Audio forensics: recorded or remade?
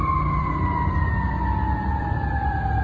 recorded